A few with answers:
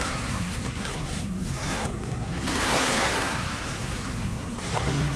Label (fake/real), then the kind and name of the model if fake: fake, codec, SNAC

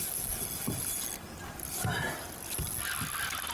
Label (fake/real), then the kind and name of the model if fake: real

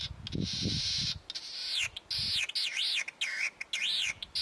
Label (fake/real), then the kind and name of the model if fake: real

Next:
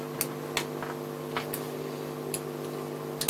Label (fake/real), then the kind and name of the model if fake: real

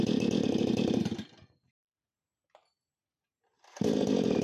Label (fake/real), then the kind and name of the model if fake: real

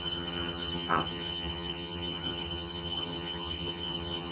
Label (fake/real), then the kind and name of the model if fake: fake, vocoder, HiFi-GAN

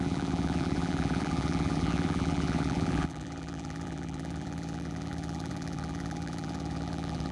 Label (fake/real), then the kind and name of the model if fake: fake, vocoder, BigVGAN v2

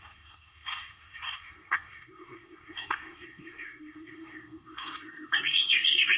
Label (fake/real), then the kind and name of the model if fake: fake, codec, SNAC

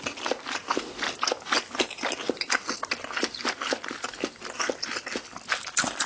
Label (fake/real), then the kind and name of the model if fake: real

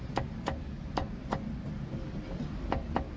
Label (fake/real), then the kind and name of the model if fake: real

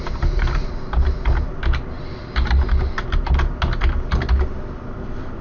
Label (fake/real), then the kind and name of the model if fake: real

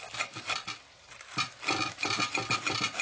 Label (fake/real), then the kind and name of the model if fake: real